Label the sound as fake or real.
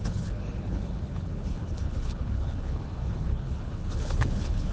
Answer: fake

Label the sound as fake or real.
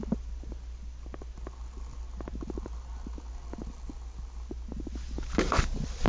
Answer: real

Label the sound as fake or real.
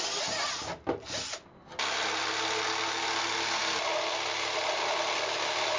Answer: real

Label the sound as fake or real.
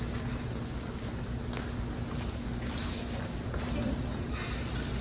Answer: real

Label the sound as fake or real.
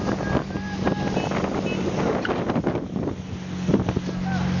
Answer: real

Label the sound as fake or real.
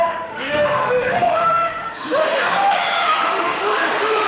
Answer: fake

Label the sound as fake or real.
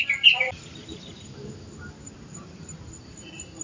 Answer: real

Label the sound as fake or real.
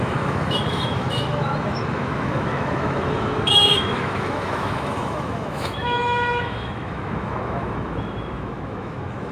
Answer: fake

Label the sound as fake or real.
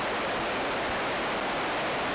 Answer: real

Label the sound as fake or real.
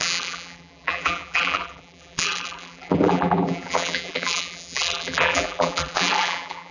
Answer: fake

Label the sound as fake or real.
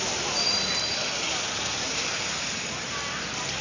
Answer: real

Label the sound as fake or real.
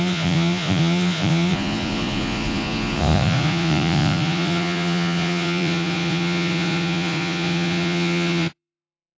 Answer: fake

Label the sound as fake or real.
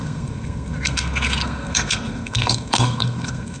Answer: fake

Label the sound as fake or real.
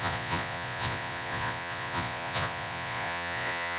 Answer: fake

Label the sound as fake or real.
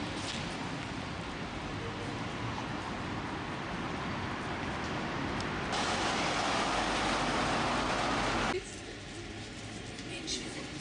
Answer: real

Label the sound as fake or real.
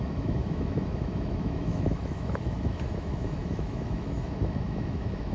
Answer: fake